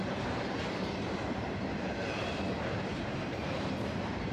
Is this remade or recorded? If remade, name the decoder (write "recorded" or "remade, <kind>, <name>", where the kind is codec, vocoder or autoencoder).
remade, vocoder, BigVGAN v2